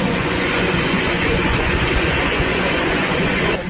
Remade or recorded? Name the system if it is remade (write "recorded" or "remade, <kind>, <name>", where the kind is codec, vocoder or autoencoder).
remade, vocoder, Vocos